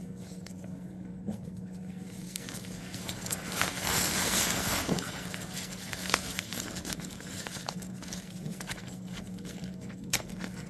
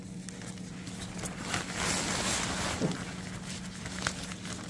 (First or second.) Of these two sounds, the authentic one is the second